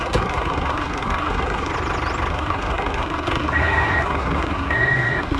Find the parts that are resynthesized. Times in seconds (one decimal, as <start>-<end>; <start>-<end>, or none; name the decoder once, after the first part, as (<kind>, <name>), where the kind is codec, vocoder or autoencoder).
0.0-1.7 (codec, SNAC); 2.3-5.4